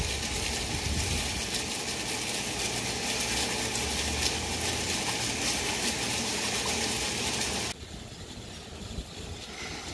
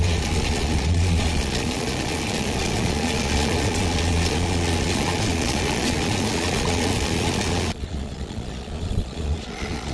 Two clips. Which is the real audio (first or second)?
first